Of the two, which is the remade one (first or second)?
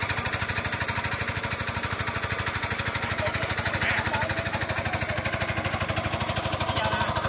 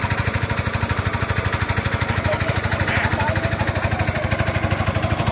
second